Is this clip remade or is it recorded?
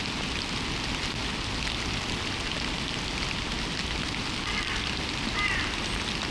recorded